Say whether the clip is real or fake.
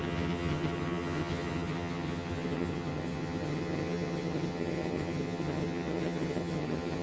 fake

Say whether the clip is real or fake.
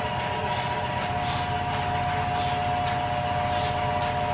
real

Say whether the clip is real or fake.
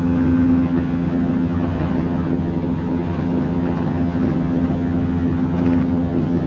fake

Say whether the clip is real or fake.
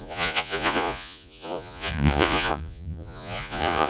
fake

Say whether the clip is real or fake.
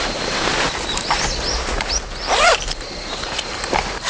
real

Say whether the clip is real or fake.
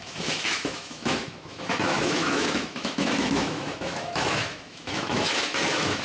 fake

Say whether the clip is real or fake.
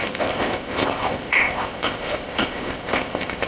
fake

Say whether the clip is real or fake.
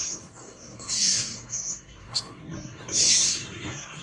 fake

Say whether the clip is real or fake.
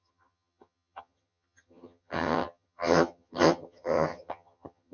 fake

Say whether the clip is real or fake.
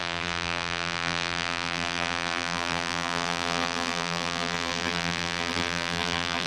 fake